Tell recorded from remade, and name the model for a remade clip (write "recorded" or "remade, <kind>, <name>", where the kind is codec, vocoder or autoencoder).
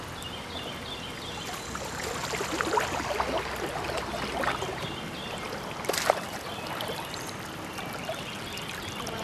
recorded